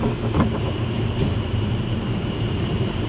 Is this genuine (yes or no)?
no